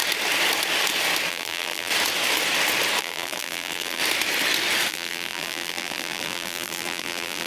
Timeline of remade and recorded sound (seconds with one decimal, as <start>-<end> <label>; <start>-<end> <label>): 0.0-1.3 recorded; 1.3-1.9 remade; 1.9-3.0 recorded; 3.0-4.0 remade; 4.0-4.9 recorded; 4.9-7.5 remade